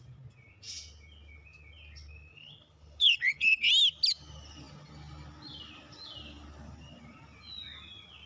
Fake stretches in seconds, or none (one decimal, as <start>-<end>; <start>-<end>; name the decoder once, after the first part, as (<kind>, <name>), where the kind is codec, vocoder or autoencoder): 2.3-3.7 (codec, HILCodec)